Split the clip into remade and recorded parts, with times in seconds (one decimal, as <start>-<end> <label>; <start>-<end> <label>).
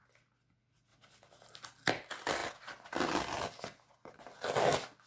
0.0-5.1 recorded